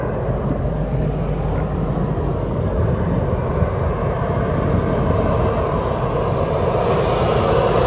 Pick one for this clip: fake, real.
real